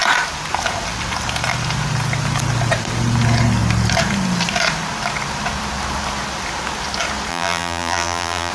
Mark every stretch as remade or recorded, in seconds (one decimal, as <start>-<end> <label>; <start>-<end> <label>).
0.0-7.3 recorded; 7.3-8.5 remade